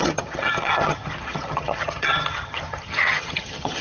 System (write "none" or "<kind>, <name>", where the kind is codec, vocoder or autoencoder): vocoder, HiFi-GAN